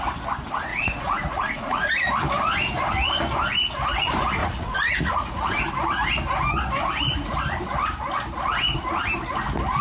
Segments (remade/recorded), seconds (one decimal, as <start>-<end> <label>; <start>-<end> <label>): 0.0-0.7 recorded; 0.7-1.9 remade; 1.9-4.4 recorded; 4.4-5.6 remade; 5.6-9.8 recorded

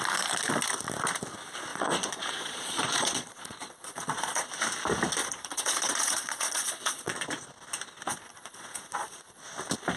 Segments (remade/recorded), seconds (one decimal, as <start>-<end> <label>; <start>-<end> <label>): 0.0-1.7 recorded; 1.7-4.5 remade; 4.5-5.2 recorded; 5.2-7.2 remade; 7.2-8.1 recorded; 8.1-9.4 remade; 9.4-10.0 recorded